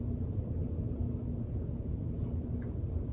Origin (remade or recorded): recorded